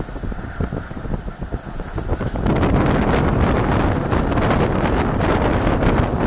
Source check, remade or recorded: recorded